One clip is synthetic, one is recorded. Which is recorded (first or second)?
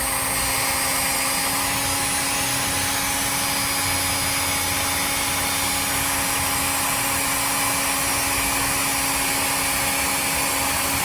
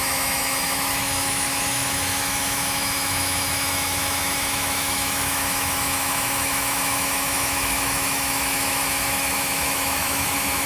first